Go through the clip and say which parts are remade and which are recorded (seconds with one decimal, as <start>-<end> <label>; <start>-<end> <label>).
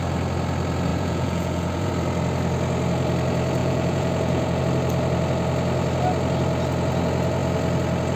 0.0-0.9 recorded; 0.9-1.9 remade; 1.9-3.6 recorded; 3.6-4.6 remade; 4.6-8.2 recorded